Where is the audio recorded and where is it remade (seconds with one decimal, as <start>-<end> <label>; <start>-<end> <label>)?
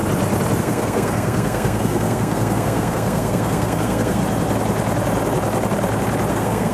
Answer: 0.0-0.6 recorded; 0.6-4.2 remade; 4.2-6.3 recorded; 6.3-6.7 remade